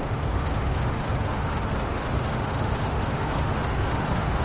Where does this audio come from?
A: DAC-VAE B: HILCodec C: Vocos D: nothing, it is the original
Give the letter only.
A